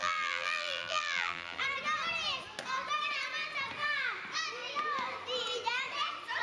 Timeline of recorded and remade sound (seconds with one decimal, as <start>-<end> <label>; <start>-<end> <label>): 0.0-1.6 remade; 1.6-6.4 recorded